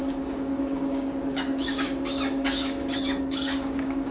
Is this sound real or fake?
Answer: fake